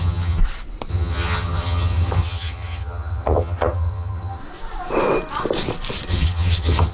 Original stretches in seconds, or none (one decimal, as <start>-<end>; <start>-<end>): 0.4-0.9; 4.4-6.1